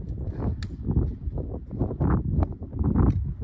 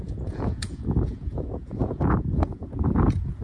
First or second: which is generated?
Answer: second